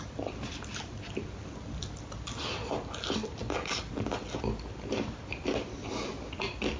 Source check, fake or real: real